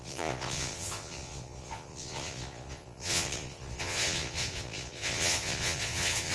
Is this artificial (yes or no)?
yes